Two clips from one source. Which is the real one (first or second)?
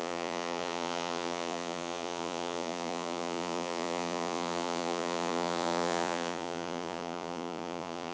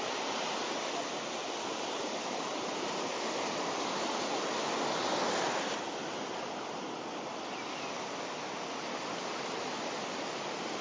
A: second